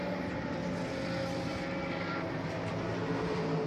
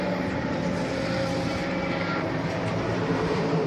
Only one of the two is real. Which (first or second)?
first